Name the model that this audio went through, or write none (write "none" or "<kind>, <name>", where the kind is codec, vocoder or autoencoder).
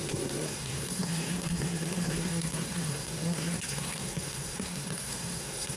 codec, SNAC